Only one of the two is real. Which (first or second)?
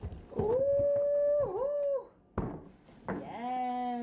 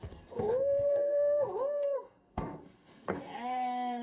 first